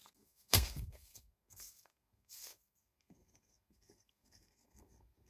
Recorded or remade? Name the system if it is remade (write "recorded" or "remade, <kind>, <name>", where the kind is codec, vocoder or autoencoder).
remade, codec, SNAC